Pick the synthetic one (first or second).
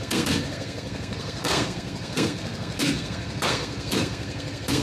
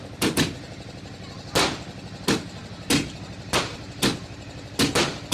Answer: first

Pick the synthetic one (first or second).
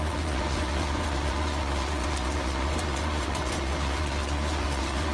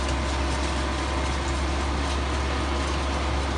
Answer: first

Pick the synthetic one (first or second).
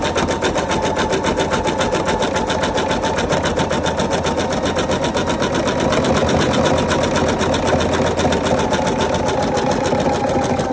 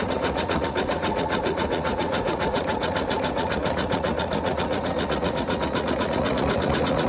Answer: second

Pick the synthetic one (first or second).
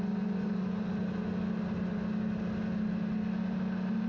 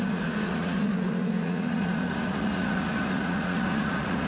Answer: second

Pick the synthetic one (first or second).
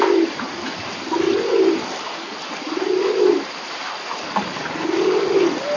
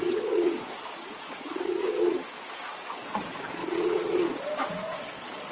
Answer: second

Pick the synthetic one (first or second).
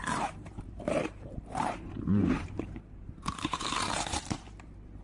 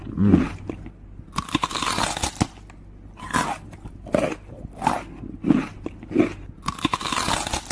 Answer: first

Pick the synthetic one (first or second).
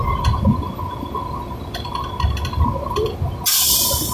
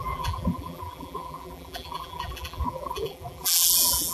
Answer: second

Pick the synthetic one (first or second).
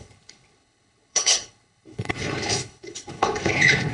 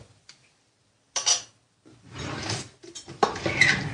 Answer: first